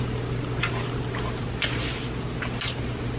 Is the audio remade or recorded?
recorded